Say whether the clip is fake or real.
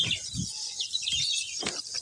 real